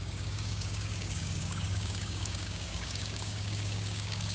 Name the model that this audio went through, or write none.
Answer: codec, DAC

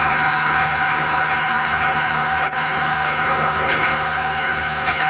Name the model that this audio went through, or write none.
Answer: codec, HILCodec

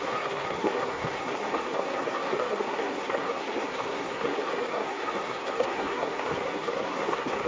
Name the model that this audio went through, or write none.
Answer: codec, SNAC